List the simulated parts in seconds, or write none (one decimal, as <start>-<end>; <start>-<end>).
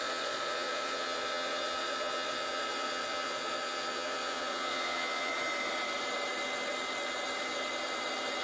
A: 0.0-5.3